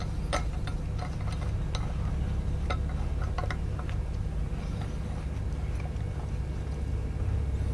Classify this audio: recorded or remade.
recorded